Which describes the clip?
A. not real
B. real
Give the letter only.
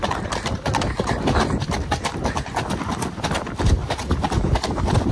B